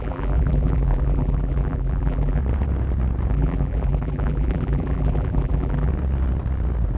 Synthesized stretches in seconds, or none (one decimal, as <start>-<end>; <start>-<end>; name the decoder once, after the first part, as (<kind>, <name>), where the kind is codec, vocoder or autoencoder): 0.0-2.4 (vocoder, BigVGAN v2); 3.3-5.9